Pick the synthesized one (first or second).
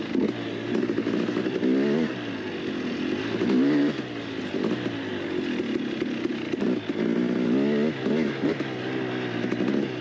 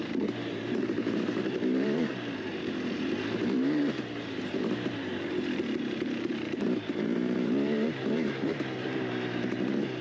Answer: second